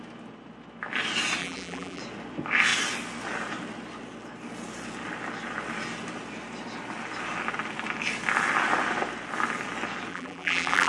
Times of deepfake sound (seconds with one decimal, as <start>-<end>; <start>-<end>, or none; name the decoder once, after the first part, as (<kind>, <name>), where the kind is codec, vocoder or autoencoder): 1.4-2.0 (vocoder, BigVGAN v2); 10.1-10.9